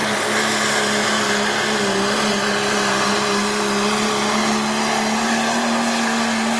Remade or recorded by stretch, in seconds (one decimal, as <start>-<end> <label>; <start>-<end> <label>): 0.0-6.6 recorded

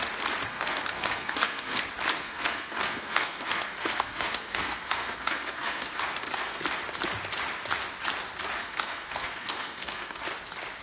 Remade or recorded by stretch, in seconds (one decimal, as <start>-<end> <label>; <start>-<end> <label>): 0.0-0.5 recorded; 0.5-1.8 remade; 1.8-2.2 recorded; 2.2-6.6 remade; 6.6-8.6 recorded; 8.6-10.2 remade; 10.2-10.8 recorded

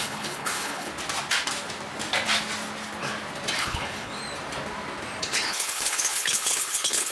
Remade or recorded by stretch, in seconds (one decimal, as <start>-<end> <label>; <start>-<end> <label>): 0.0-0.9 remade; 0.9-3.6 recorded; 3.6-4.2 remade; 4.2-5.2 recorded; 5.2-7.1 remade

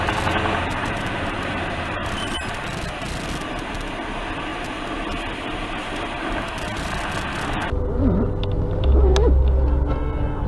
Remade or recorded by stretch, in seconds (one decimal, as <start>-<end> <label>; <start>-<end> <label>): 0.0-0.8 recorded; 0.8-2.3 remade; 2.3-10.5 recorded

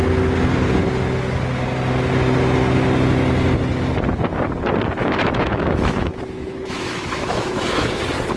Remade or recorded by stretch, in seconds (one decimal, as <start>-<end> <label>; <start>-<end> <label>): 0.0-5.0 recorded; 5.0-8.0 remade; 8.0-8.4 recorded

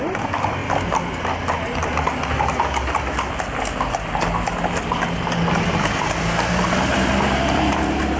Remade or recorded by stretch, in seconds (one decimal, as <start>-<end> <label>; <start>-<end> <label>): 0.0-0.6 remade; 0.6-5.5 recorded; 5.5-8.2 remade

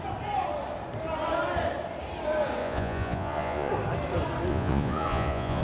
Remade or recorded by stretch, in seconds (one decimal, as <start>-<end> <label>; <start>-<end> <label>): 0.0-2.6 recorded; 2.6-3.7 remade; 3.7-4.5 recorded; 4.5-5.6 remade